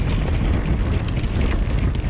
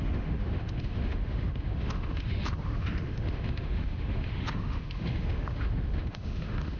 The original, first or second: first